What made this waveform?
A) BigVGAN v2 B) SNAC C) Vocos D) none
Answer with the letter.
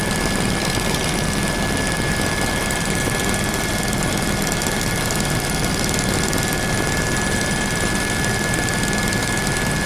A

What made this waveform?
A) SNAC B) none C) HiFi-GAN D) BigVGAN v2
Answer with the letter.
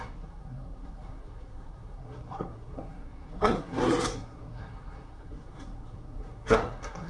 A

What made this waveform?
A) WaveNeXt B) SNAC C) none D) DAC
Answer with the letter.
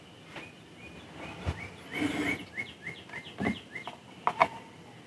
C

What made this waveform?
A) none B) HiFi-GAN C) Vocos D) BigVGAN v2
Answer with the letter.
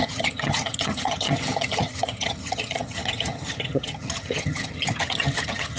B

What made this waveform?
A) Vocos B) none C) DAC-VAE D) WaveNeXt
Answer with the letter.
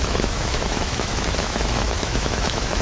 C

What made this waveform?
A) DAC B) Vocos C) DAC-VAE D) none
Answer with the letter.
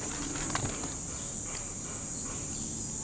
D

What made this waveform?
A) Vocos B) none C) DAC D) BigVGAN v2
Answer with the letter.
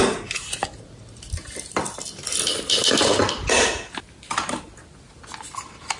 B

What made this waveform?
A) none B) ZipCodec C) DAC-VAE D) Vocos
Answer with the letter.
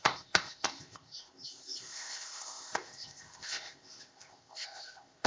B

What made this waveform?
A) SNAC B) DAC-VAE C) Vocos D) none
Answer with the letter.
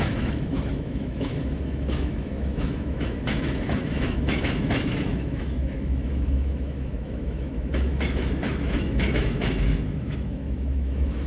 B